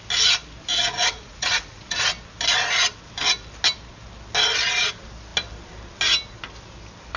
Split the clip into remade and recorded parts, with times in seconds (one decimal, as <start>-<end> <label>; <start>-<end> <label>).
0.0-0.7 recorded; 0.7-2.0 remade; 2.0-7.2 recorded